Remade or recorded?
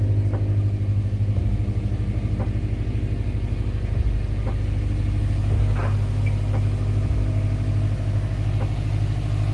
recorded